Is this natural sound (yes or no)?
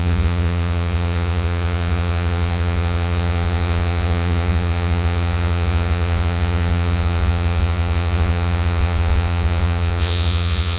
no